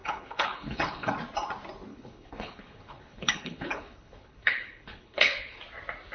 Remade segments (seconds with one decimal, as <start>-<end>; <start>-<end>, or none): 0.0-1.1; 1.9-5.6